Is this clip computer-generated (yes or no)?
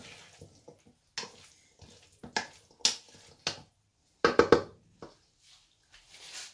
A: no